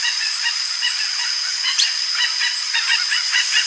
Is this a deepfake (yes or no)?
yes